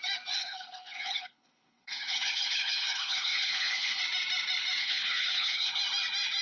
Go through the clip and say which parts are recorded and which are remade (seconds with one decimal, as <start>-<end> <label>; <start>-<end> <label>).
0.0-0.4 recorded; 0.4-4.0 remade; 4.0-4.8 recorded; 4.8-5.7 remade; 5.7-6.4 recorded